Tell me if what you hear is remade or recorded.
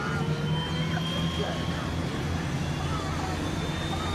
recorded